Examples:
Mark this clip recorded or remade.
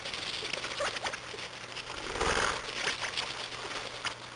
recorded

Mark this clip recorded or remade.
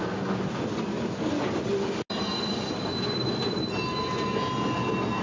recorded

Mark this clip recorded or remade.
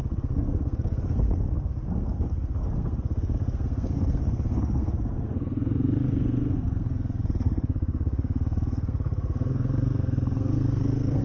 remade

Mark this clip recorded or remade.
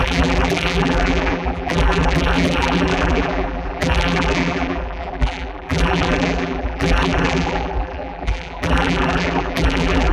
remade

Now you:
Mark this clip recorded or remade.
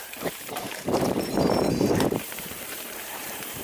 remade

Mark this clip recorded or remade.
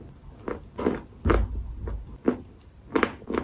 recorded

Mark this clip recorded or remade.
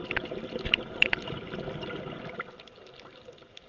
recorded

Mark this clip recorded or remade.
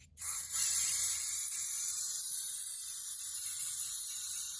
recorded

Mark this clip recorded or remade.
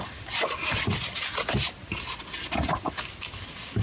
recorded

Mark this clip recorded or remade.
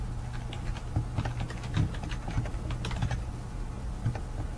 recorded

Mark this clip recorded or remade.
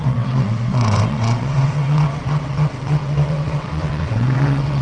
remade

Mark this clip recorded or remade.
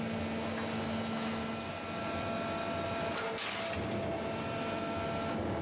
recorded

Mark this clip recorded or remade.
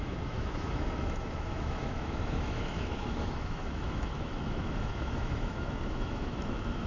remade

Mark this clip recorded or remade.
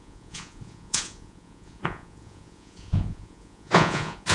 remade